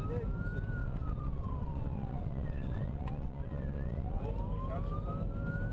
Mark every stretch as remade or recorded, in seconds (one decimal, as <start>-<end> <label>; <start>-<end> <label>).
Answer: 0.0-0.8 recorded; 0.8-4.2 remade; 4.2-5.7 recorded